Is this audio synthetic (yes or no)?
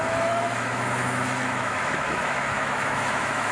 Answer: yes